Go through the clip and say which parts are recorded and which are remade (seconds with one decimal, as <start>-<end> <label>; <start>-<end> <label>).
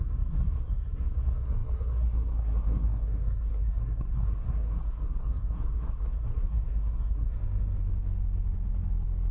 0.0-7.4 remade; 7.4-9.3 recorded